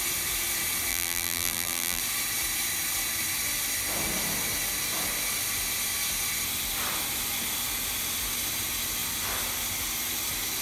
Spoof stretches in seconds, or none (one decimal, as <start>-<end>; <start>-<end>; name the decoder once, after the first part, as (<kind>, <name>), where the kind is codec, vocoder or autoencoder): 0.9-2.0 (vocoder, BigVGAN v2)